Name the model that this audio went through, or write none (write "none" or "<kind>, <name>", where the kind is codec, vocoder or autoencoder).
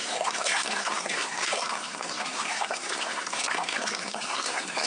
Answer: codec, SNAC